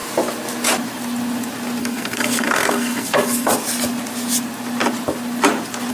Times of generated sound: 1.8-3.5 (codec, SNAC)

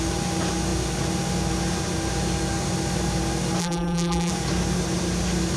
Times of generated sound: 3.6-4.3 (vocoder, BigVGAN v2)

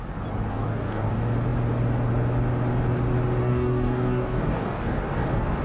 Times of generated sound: 0.5-1.1 (codec, DAC); 3.4-5.6

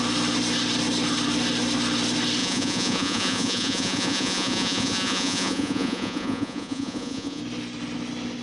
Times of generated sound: 2.4-7.4 (vocoder, Vocos)